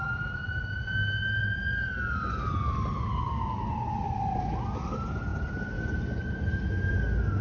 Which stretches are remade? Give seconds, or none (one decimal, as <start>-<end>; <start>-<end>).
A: none